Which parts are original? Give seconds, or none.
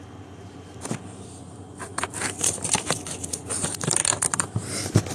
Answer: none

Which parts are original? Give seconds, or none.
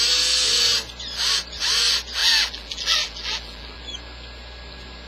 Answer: 0.0-2.2; 3.8-5.1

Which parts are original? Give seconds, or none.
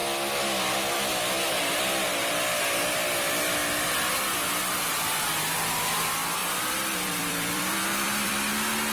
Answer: 0.0-3.6; 4.1-6.4; 8.3-8.9